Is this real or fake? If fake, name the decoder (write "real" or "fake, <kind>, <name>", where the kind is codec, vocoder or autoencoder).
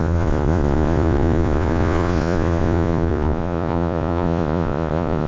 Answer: fake, vocoder, Vocos